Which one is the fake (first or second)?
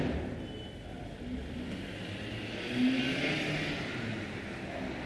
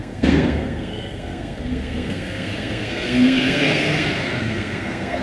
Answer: second